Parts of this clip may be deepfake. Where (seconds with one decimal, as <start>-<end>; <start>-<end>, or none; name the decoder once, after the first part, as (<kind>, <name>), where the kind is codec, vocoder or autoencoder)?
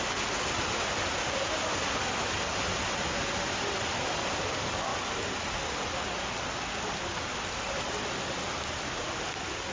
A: none